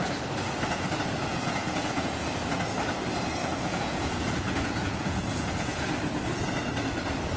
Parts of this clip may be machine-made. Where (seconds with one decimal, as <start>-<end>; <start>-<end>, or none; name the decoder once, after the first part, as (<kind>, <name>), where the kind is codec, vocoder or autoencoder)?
1.3-2.1 (vocoder, Vocos); 3.4-5.9